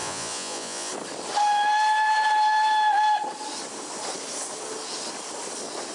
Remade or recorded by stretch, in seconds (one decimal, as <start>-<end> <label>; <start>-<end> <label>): 0.0-0.9 remade; 0.9-5.9 recorded